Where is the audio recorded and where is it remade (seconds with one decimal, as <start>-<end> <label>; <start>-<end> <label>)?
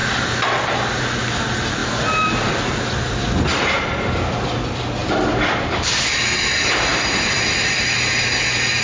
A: 0.0-1.8 recorded; 1.8-2.4 remade; 2.4-5.0 recorded; 5.0-6.5 remade; 6.5-6.9 recorded; 6.9-7.9 remade; 7.9-8.8 recorded